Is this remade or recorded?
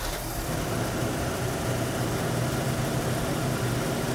recorded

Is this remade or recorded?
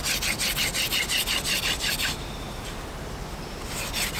recorded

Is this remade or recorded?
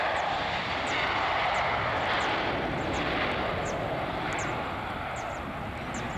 recorded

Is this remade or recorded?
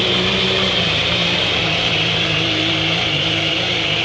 remade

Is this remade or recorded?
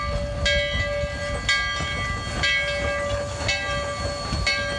recorded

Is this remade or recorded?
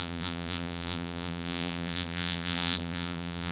remade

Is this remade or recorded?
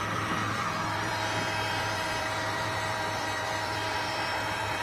remade